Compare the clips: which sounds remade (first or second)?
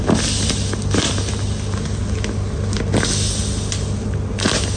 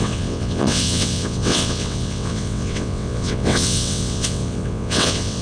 second